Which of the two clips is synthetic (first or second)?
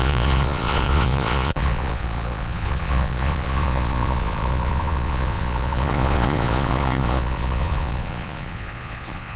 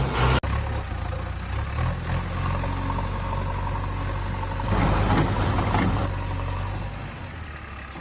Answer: first